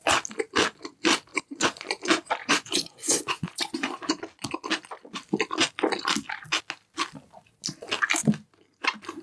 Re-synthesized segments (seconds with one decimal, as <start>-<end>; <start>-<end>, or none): 1.3-2.0; 2.4-4.2